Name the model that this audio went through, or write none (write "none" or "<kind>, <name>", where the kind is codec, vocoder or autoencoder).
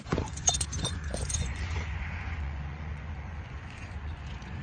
vocoder, Vocos